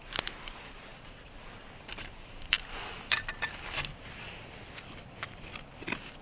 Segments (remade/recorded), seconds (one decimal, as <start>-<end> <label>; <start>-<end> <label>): 0.0-6.2 recorded